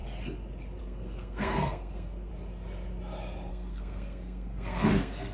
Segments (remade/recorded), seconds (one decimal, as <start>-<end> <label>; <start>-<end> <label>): 0.0-0.8 recorded; 0.8-2.3 remade; 2.3-3.5 recorded; 3.5-5.3 remade